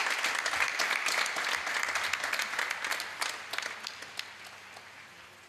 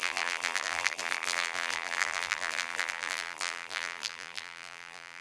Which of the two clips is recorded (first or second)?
first